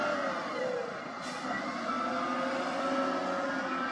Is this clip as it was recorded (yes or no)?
yes